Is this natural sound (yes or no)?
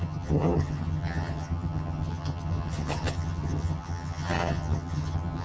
no